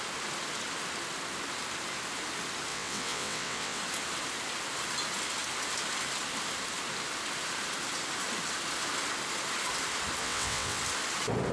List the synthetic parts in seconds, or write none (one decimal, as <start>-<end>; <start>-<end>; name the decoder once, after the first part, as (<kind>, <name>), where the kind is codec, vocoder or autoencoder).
2.7-3.8 (vocoder, WaveNeXt); 10.2-10.8

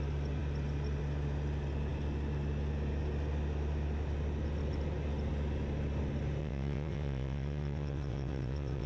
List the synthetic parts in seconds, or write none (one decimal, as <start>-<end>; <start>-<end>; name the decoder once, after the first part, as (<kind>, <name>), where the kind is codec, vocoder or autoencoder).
6.4-8.9 (vocoder, WaveNeXt)

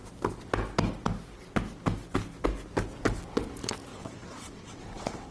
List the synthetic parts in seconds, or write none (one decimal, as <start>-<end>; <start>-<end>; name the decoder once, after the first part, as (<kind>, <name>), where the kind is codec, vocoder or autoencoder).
3.9-5.3 (vocoder, WaveNeXt)